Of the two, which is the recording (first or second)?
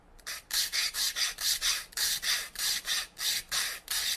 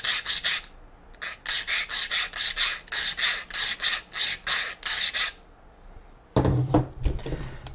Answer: second